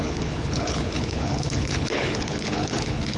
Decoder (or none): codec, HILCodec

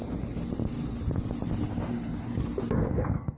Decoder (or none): none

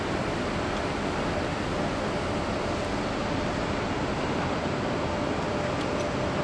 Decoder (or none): none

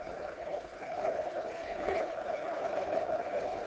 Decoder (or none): codec, HILCodec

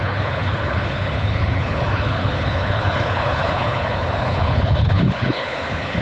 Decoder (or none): codec, HILCodec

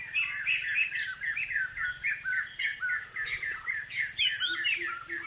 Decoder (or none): none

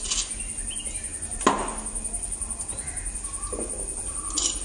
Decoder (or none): none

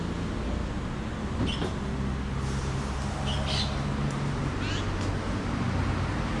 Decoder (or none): none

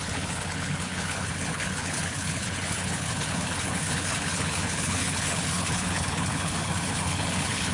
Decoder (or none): codec, HILCodec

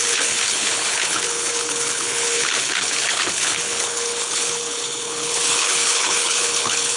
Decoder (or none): codec, HILCodec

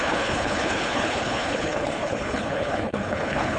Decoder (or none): codec, HILCodec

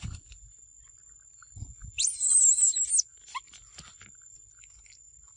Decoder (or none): none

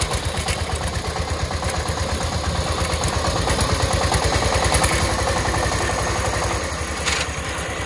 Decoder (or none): none